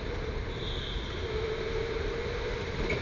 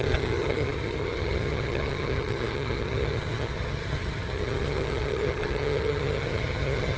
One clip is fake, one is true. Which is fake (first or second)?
second